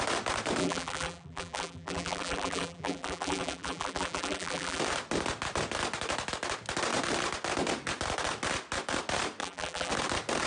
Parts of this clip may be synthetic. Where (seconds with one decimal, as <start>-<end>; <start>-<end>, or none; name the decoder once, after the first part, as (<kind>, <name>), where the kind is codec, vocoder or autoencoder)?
0.6-4.8 (vocoder, BigVGAN v2); 9.4-9.9